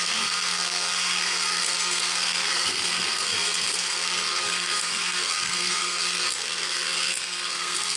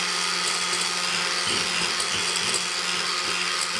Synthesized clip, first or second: first